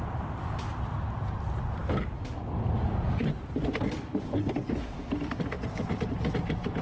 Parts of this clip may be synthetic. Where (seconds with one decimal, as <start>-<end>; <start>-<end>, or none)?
none